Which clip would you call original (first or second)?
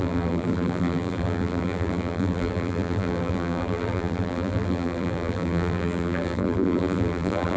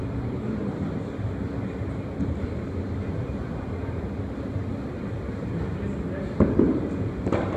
second